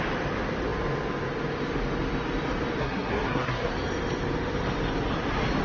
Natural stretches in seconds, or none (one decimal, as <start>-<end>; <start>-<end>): 0.0-2.8; 3.7-5.6